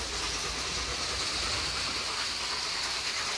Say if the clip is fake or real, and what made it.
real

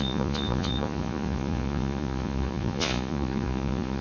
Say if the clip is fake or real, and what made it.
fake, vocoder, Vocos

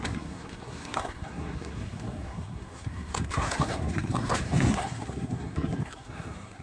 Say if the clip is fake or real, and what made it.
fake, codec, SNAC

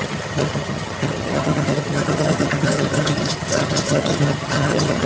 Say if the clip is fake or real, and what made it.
fake, vocoder, HiFi-GAN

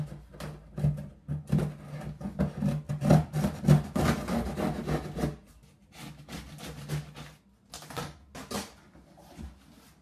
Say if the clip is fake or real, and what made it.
real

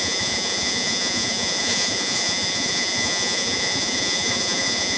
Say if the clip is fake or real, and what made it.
fake, vocoder, Vocos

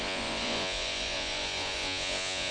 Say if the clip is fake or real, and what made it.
fake, vocoder, Vocos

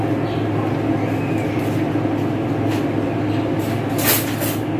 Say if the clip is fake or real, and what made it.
real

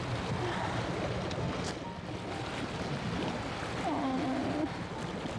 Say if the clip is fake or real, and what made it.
real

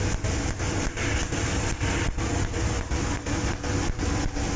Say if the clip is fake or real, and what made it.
real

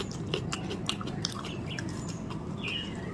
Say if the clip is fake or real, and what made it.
real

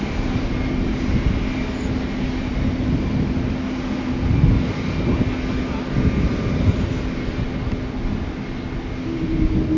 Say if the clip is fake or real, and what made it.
real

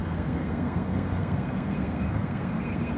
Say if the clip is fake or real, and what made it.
fake, codec, SNAC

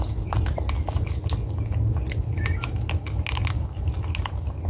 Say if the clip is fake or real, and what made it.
real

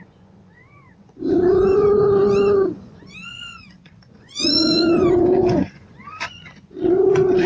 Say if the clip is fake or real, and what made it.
fake, vocoder, Vocos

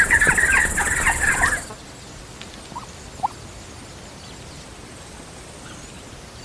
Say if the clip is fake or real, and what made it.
real